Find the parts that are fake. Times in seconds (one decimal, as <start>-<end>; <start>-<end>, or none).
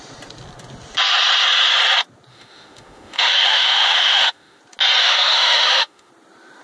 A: 2.3-4.6; 5.0-6.1